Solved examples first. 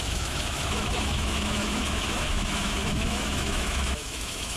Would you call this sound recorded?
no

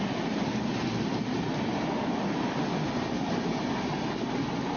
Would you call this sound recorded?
yes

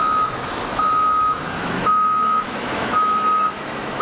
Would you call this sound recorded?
no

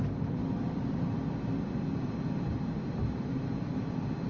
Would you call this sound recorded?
yes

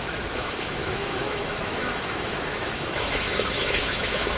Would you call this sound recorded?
no